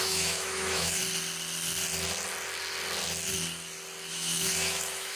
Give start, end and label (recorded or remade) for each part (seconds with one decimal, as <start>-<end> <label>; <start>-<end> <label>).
0.0-1.0 remade; 1.0-4.1 recorded; 4.1-5.2 remade